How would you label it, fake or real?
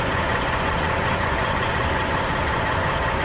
fake